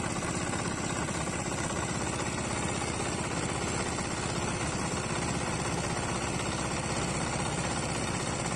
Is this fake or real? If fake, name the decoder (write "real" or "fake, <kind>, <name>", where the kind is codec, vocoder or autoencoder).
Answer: real